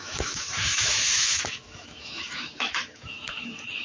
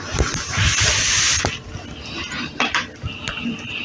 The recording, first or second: second